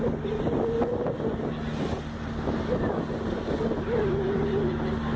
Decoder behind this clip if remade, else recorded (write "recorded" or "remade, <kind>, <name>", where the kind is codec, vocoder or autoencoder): recorded